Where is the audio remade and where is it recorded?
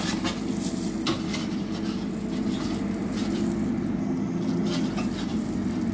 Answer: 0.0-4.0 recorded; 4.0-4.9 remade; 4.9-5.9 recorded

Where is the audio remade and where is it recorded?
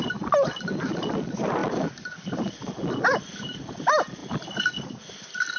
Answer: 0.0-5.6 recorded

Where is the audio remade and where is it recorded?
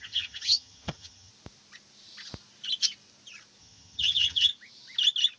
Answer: 0.0-1.3 remade; 1.3-3.6 recorded; 3.6-4.5 remade; 4.5-5.4 recorded